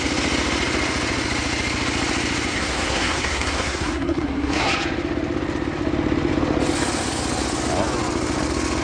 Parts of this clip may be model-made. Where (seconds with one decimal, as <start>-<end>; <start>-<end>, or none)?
2.5-4.7